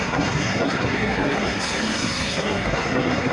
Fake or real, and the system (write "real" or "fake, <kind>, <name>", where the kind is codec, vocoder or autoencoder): fake, codec, SNAC